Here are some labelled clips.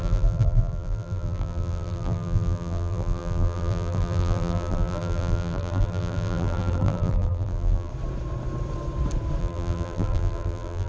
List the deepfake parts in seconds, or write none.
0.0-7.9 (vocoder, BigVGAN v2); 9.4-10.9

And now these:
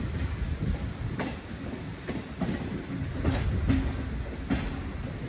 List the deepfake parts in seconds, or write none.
2.2-3.1 (vocoder, BigVGAN v2)

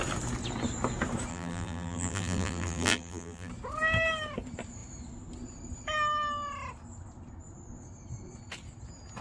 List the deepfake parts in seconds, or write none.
1.3-3.5 (vocoder, BigVGAN v2)